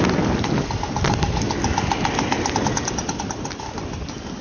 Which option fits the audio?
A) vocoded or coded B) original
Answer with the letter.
B